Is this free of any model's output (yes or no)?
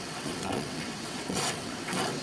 no